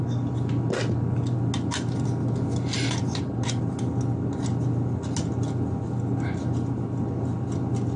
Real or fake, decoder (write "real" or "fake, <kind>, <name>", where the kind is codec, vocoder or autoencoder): real